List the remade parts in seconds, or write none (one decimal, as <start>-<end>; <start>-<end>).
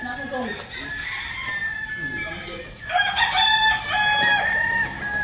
none